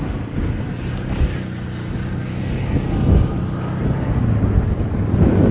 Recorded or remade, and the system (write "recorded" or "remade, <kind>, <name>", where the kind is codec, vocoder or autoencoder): recorded